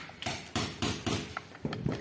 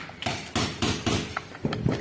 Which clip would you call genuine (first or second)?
second